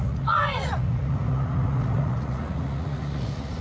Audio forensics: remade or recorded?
remade